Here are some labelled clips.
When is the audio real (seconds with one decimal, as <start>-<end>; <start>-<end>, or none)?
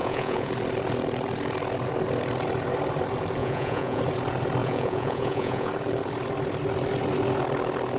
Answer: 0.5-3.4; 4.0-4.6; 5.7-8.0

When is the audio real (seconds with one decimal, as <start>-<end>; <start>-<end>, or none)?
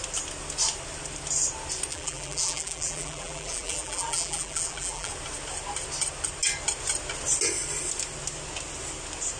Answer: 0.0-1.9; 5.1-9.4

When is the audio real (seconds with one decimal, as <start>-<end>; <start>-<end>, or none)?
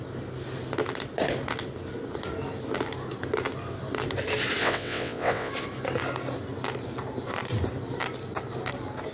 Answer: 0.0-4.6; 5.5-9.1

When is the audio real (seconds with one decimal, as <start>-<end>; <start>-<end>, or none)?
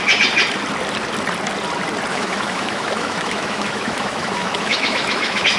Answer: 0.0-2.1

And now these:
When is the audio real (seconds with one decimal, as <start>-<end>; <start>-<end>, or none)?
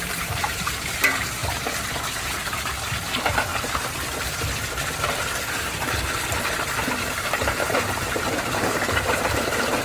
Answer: 3.5-7.1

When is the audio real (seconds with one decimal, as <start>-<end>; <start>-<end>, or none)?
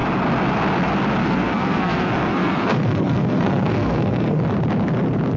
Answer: 0.0-1.2; 4.4-5.4